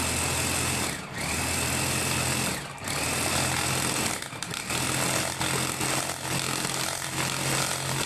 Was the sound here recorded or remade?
recorded